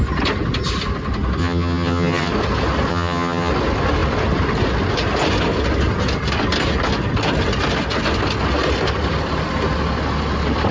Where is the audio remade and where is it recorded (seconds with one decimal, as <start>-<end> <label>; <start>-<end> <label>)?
0.0-1.4 recorded; 1.4-2.3 remade; 2.3-2.9 recorded; 2.9-3.5 remade; 3.5-10.7 recorded